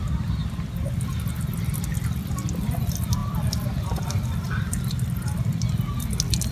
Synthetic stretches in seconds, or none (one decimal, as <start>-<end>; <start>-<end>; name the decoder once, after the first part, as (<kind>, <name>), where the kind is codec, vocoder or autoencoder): 3.2-4.9 (vocoder, BigVGAN v2)